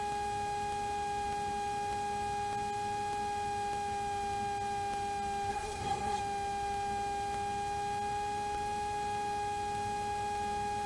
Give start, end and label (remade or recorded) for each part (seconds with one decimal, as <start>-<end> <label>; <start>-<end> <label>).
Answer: 0.0-5.5 recorded; 5.5-6.2 remade; 6.2-10.9 recorded